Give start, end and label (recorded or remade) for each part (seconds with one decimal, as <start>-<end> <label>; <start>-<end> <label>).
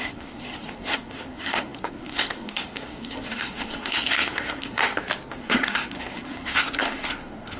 0.0-4.8 remade; 4.8-5.3 recorded; 5.3-7.6 remade